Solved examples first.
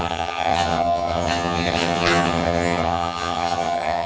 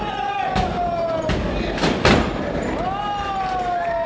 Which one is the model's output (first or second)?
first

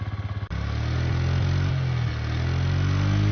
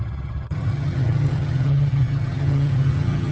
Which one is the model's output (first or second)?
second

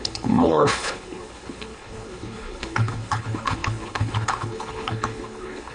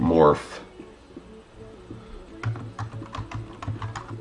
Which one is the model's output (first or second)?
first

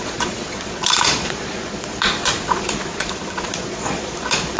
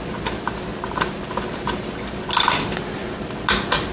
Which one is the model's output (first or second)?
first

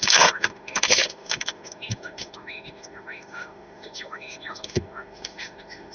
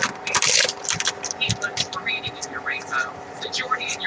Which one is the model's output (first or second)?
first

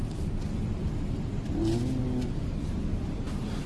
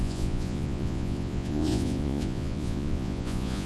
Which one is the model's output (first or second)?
second